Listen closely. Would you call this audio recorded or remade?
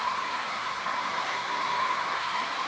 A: remade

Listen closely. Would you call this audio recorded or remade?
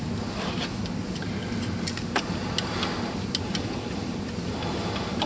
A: recorded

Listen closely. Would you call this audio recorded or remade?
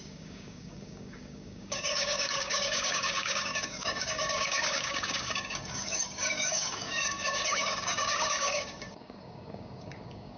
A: remade